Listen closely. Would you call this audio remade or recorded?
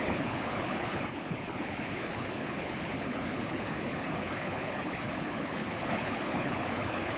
remade